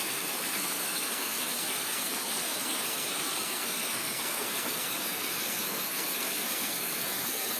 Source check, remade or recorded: remade